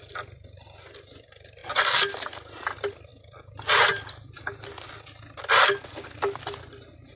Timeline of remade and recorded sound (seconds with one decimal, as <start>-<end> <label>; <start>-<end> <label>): 0.0-7.2 recorded